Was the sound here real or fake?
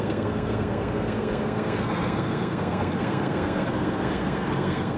fake